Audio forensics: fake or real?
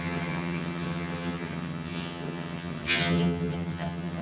fake